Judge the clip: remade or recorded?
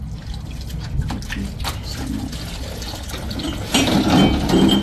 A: recorded